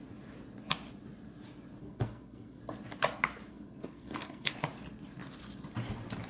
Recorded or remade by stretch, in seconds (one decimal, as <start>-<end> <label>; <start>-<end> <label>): 0.0-1.8 recorded; 1.8-2.6 remade; 2.6-3.5 recorded; 3.5-4.5 remade; 4.5-6.3 recorded